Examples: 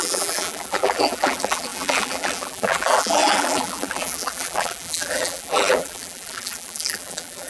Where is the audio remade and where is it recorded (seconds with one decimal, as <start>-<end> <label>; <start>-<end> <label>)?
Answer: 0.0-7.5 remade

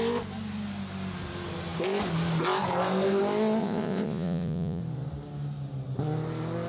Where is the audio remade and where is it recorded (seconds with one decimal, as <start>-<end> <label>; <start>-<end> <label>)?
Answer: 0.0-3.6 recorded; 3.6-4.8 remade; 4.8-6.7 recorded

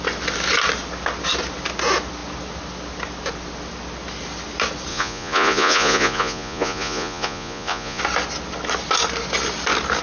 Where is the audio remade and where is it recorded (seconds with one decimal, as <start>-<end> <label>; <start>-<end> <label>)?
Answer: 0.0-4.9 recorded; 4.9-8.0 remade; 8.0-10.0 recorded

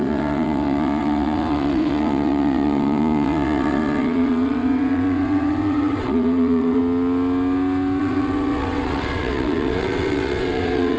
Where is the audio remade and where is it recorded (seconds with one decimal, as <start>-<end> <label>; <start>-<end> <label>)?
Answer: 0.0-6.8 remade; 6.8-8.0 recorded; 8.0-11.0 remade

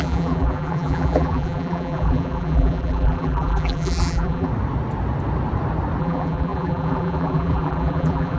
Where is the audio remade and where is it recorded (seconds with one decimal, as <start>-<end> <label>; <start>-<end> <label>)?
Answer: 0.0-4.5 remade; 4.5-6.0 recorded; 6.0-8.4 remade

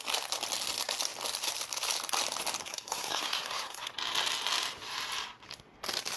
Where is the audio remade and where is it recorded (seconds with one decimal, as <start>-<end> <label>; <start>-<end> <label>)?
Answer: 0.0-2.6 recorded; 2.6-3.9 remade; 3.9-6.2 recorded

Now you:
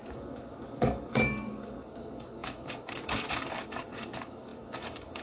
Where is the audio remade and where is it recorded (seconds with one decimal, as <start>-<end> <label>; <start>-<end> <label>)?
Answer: 0.0-5.2 remade

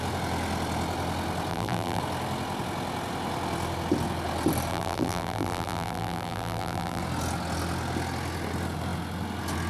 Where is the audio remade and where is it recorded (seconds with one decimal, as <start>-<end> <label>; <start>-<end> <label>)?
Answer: 0.0-1.5 recorded; 1.5-2.0 remade; 2.0-4.7 recorded; 4.7-7.0 remade; 7.0-9.7 recorded